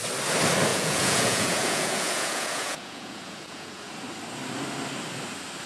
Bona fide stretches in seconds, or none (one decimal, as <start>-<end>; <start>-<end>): 0.0-0.7; 3.9-5.7